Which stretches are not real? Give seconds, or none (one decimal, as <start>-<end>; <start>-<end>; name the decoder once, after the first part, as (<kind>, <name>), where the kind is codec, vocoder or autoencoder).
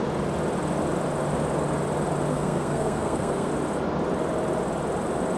2.3-3.5 (codec, SNAC)